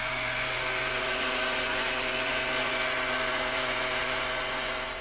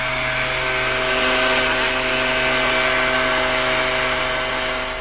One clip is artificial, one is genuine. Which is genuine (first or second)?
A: second